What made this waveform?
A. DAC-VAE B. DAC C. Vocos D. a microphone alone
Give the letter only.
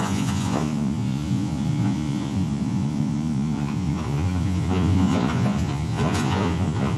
C